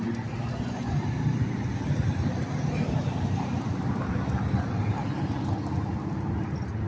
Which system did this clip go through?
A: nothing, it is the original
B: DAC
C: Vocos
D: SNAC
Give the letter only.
A